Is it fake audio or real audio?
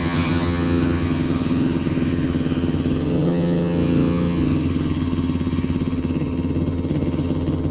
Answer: fake